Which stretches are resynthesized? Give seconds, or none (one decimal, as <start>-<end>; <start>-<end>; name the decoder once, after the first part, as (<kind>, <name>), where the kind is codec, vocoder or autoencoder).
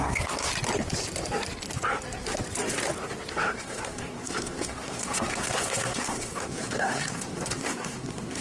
0.0-0.5 (codec, SNAC); 3.3-8.4